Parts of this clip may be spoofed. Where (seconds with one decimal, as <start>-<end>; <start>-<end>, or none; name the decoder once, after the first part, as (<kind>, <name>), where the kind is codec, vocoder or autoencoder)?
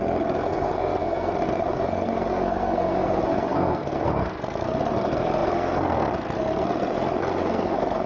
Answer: 0.0-8.1 (codec, SNAC)